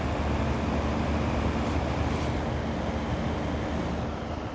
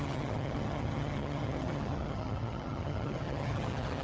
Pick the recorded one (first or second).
first